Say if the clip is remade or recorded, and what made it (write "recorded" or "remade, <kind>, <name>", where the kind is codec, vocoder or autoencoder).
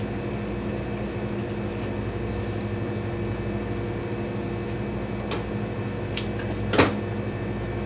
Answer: recorded